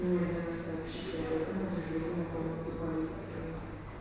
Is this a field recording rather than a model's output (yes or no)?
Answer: yes